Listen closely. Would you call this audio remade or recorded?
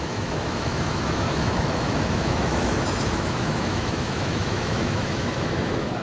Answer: remade